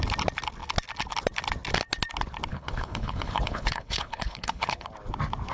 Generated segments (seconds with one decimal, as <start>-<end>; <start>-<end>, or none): 2.5-4.9